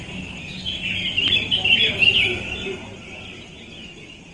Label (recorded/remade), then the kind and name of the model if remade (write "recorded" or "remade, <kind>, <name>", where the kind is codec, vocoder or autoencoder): recorded